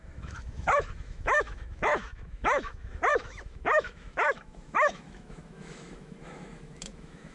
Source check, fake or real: fake